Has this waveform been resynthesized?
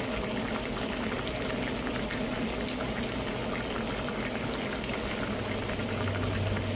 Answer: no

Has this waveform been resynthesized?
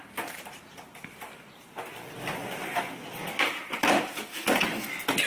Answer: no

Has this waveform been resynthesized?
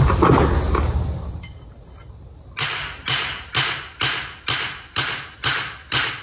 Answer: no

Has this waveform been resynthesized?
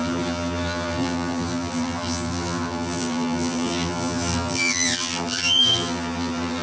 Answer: yes